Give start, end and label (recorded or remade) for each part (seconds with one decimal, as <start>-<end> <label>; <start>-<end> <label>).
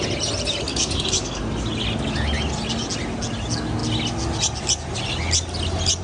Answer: 0.0-0.7 recorded; 0.7-1.4 remade; 1.4-6.0 recorded